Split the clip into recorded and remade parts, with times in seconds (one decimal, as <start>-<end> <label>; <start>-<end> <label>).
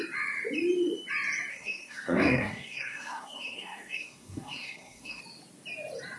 0.0-1.5 recorded; 1.5-5.2 remade; 5.2-6.2 recorded